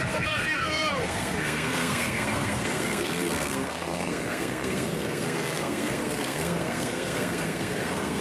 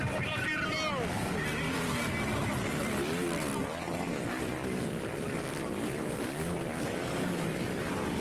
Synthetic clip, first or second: first